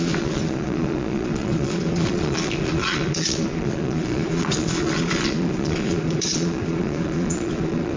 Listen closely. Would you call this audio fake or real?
fake